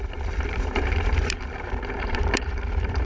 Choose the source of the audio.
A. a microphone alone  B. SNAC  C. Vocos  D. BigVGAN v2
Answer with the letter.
D